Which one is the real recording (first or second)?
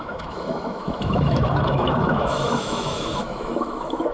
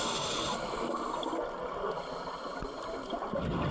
second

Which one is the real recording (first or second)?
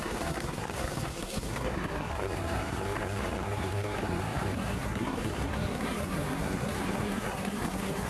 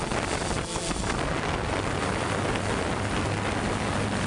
second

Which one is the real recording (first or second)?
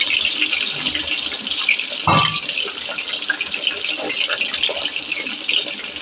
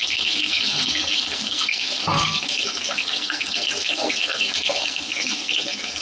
first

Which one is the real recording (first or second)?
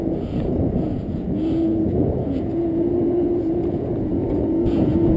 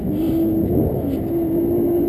second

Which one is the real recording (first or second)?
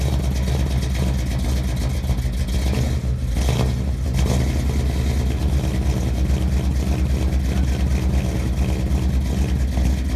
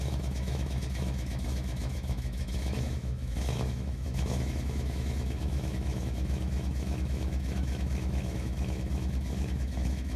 first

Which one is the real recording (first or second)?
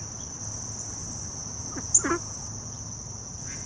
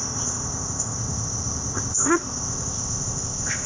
first